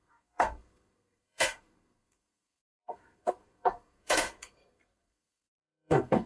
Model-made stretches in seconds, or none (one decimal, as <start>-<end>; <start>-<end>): 0.0-6.3